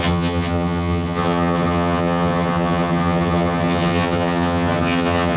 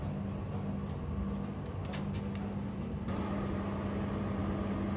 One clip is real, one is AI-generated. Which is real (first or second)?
second